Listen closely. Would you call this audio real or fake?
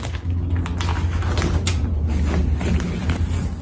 real